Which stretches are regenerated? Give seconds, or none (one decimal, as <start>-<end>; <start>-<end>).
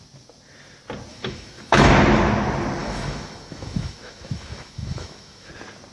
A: 1.1-1.9; 2.8-5.5